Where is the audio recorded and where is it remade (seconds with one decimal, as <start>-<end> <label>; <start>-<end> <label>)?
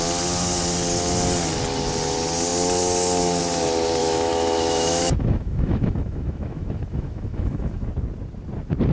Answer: 0.0-4.0 recorded; 4.0-7.9 remade; 7.9-8.9 recorded